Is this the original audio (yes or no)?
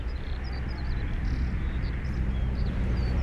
no